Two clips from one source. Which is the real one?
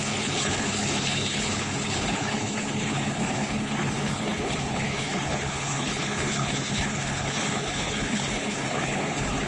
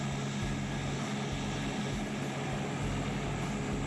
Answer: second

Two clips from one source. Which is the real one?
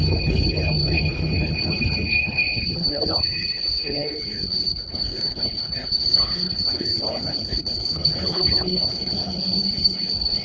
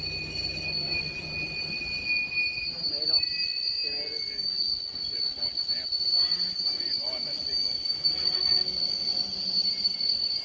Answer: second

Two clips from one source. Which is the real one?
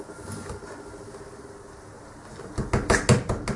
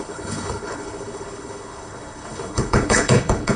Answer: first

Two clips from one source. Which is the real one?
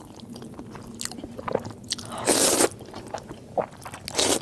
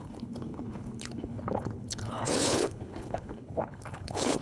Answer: first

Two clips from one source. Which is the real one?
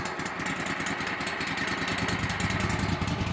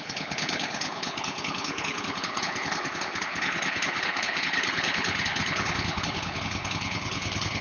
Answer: first